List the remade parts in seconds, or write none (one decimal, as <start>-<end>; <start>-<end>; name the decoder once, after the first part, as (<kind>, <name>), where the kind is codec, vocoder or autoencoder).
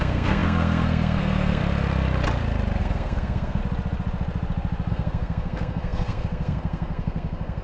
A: 0.0-1.6 (codec, SNAC); 2.8-3.6; 4.9-7.6